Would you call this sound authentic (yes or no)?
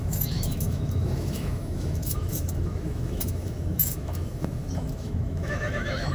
no